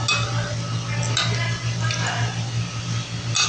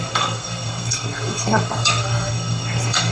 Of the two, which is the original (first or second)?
first